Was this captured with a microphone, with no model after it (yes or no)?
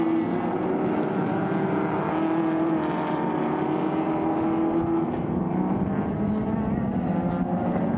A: yes